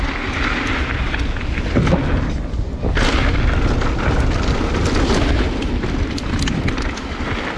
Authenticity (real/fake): real